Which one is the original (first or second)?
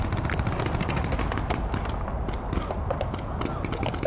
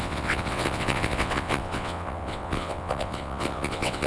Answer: first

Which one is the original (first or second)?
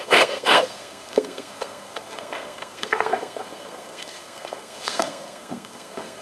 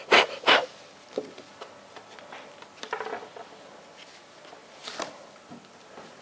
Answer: second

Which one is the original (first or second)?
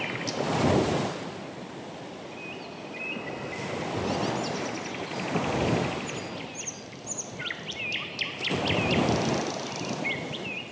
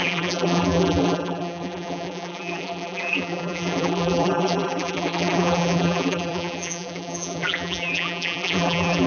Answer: first